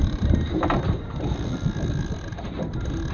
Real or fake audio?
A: real